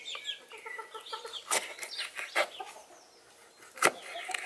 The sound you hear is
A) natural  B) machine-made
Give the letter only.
A